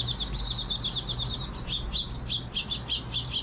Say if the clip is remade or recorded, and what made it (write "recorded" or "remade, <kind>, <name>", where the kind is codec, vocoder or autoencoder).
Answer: recorded